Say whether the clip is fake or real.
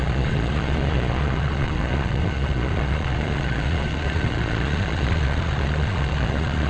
fake